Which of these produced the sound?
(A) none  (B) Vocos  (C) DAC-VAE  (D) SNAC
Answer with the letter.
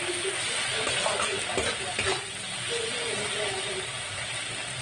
A